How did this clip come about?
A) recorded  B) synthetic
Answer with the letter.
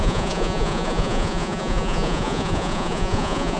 B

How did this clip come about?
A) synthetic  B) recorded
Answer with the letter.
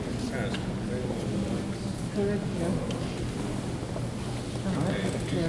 B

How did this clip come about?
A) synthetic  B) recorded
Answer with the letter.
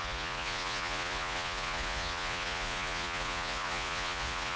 A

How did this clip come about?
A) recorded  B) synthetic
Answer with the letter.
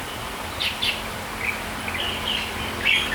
A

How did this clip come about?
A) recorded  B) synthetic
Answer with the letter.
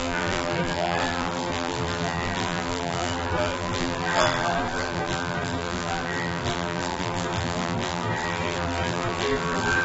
B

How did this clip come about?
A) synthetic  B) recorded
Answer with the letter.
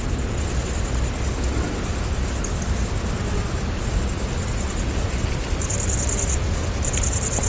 B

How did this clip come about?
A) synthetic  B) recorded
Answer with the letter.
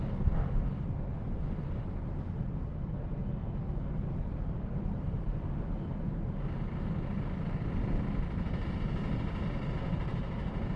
B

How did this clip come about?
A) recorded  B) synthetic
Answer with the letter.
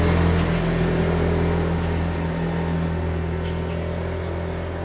A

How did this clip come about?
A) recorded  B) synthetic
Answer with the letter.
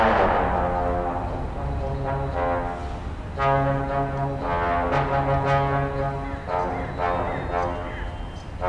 A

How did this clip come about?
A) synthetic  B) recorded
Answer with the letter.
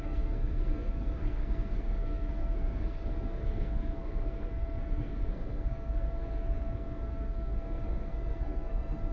A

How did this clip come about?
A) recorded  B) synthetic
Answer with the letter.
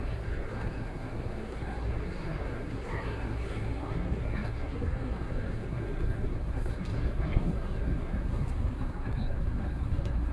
B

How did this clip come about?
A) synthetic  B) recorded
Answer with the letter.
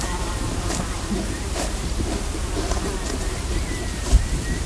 A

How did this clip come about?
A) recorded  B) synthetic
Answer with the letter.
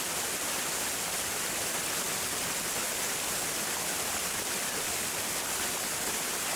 A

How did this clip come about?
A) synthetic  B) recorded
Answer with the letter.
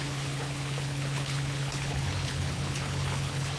A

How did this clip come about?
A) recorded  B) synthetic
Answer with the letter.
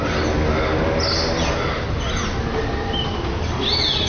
A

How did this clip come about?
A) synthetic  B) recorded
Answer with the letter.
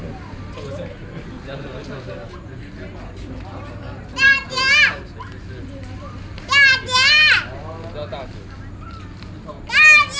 B